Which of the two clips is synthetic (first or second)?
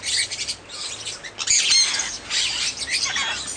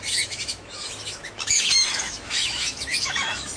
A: second